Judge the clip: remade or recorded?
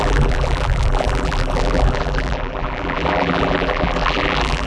remade